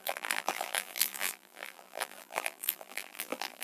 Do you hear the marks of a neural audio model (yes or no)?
yes